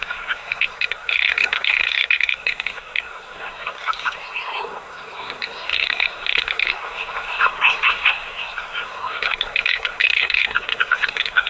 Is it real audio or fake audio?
fake